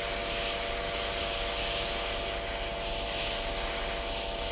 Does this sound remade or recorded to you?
recorded